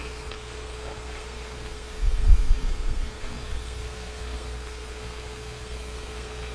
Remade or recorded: remade